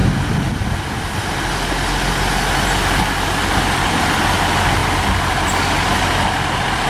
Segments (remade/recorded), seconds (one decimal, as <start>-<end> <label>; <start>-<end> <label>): 0.0-6.9 recorded